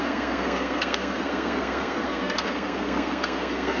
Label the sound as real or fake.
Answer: fake